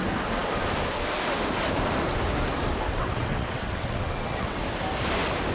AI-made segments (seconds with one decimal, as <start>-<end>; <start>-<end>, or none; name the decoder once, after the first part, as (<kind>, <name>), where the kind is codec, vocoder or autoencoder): 2.9-4.6 (vocoder, WaveNeXt)